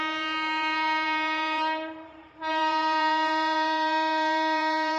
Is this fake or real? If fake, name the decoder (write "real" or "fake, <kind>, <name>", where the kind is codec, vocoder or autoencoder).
fake, vocoder, BigVGAN v2